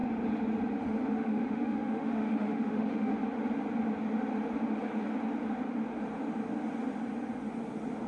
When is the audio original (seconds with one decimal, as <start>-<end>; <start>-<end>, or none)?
0.0-1.1; 3.1-8.1